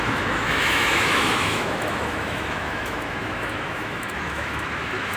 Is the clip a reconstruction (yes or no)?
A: yes